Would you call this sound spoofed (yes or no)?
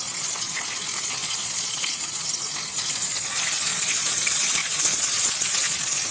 yes